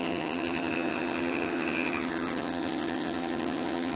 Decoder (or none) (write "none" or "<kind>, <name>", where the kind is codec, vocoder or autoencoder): vocoder, HiFi-GAN